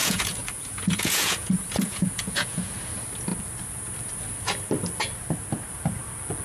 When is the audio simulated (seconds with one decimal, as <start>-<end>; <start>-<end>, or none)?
0.0-2.7